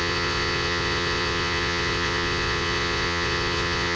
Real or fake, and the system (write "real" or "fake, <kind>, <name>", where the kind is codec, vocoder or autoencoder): fake, vocoder, Vocos